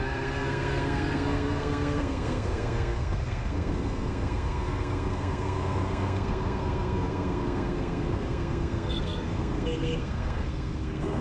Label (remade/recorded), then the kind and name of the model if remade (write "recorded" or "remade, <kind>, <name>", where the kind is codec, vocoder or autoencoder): remade, codec, SNAC